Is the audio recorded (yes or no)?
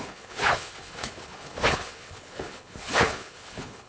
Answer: no